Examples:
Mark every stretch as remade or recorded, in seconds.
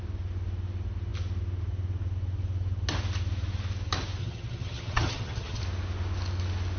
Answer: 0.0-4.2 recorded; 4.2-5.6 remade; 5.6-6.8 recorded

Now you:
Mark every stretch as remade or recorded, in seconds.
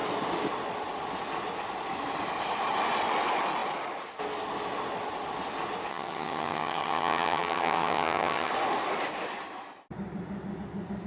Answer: 0.0-5.9 recorded; 5.9-8.5 remade; 8.5-11.1 recorded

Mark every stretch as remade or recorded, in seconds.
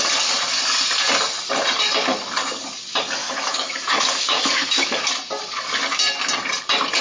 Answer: 0.0-3.2 recorded; 3.2-5.0 remade; 5.0-7.0 recorded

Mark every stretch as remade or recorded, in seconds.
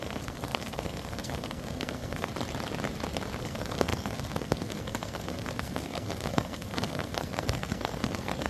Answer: 0.0-2.3 remade; 2.3-3.4 recorded; 3.4-8.5 remade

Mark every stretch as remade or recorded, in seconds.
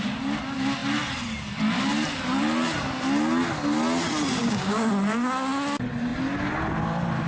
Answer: 0.0-4.4 recorded; 4.4-4.9 remade; 4.9-7.3 recorded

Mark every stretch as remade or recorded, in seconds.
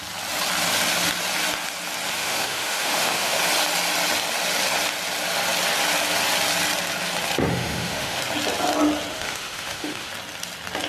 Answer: 0.0-2.2 recorded; 2.2-3.4 remade; 3.4-7.5 recorded; 7.5-8.2 remade; 8.2-9.1 recorded; 9.1-10.1 remade; 10.1-10.9 recorded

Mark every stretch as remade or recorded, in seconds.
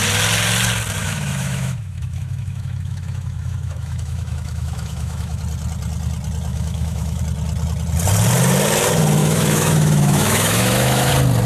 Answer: 0.0-1.0 recorded; 1.0-5.4 remade; 5.4-6.5 recorded; 6.5-7.2 remade; 7.2-9.2 recorded; 9.2-11.1 remade; 11.1-11.5 recorded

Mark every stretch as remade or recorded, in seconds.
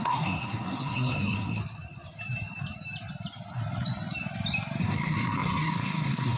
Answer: 0.0-1.6 remade; 1.6-4.8 recorded; 4.8-6.4 remade